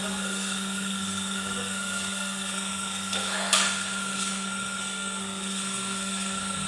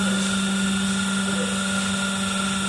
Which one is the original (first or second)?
second